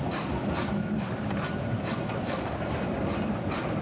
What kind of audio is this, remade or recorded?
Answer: recorded